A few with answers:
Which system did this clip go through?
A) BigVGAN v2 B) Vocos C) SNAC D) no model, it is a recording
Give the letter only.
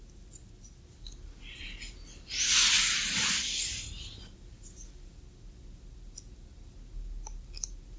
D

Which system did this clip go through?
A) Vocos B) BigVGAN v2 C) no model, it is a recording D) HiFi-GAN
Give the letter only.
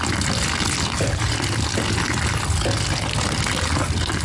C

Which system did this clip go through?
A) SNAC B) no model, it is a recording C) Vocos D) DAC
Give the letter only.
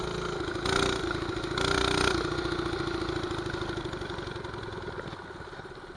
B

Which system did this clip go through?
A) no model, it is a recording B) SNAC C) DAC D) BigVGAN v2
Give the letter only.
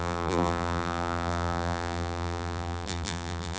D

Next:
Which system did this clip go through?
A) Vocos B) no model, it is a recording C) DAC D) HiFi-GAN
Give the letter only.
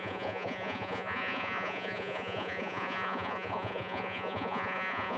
A